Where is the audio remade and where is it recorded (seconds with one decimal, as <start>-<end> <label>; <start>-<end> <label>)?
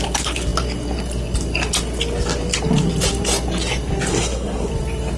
0.0-4.1 recorded; 4.1-4.7 remade; 4.7-5.2 recorded